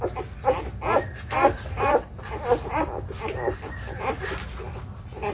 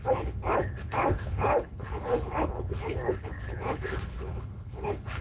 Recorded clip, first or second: first